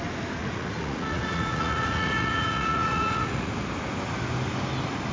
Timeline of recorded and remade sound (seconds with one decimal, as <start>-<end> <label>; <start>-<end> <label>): 0.0-0.4 recorded; 0.4-3.5 remade; 3.5-5.1 recorded